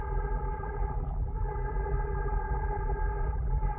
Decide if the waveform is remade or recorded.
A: remade